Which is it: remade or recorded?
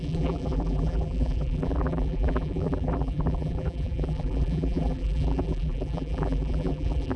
remade